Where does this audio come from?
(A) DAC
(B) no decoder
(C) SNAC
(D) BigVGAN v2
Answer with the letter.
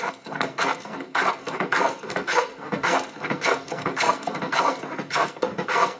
C